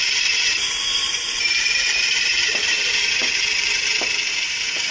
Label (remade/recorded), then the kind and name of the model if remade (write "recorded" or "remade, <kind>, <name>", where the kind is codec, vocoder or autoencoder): remade, vocoder, BigVGAN v2